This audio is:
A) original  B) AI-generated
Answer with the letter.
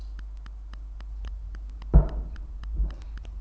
A